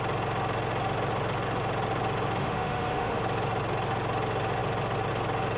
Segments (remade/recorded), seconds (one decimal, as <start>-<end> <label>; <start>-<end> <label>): 0.0-2.4 recorded; 2.4-3.2 remade; 3.2-5.6 recorded